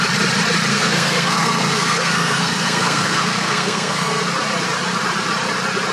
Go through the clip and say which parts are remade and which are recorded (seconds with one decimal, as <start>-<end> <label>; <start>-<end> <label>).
0.0-0.7 recorded; 0.7-4.2 remade; 4.2-5.9 recorded